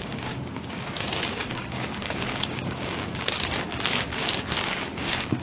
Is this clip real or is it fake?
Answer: fake